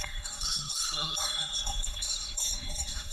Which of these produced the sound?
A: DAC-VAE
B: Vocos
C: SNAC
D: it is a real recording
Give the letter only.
C